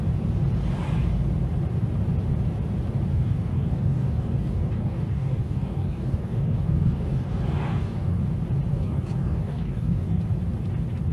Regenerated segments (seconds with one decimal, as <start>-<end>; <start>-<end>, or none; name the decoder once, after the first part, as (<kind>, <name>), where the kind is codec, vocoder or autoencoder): 3.1-8.2 (codec, DAC); 8.7-10.2

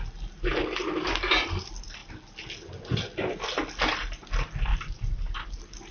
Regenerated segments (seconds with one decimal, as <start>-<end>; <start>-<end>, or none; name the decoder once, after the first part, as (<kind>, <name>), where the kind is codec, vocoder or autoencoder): 4.7-5.5 (vocoder, BigVGAN v2)

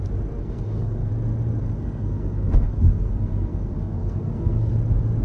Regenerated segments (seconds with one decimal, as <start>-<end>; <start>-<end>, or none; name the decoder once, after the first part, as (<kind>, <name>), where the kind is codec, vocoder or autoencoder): 0.4-1.1 (codec, SNAC); 1.6-4.7

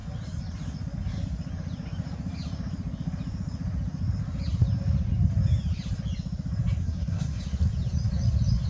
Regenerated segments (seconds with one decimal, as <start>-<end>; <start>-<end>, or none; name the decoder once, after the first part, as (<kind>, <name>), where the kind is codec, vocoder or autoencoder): 6.8-7.4 (codec, SNAC)

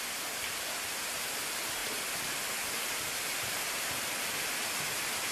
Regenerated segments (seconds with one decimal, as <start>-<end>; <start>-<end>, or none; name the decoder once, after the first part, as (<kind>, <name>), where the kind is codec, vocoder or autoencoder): none

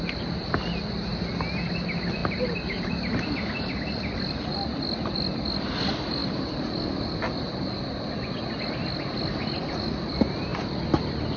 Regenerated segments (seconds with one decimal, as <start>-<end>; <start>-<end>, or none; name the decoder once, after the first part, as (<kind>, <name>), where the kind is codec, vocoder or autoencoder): none

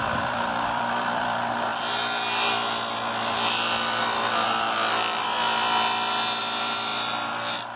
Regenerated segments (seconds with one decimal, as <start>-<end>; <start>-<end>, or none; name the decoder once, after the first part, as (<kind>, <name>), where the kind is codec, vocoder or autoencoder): 0.0-1.7 (vocoder, BigVGAN v2); 6.4-6.9